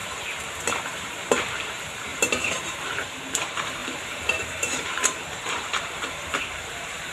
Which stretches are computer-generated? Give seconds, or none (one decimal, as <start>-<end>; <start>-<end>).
0.6-7.1